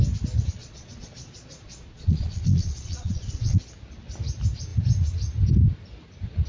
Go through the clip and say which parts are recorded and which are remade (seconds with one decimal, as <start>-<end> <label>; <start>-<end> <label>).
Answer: 0.0-0.6 recorded; 0.6-3.7 remade; 3.7-6.5 recorded